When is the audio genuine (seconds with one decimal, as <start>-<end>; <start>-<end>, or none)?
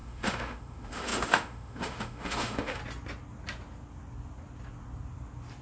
2.8-5.6